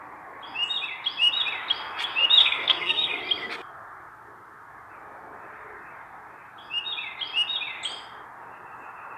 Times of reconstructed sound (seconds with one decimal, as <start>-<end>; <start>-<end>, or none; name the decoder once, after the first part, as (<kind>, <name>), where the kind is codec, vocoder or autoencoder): 2.4-3.2 (codec, SNAC)